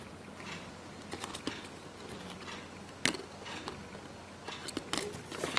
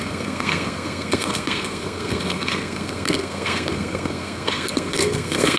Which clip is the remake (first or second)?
second